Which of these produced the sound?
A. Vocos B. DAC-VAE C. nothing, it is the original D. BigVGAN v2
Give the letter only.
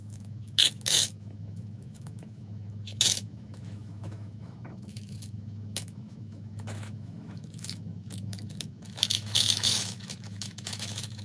B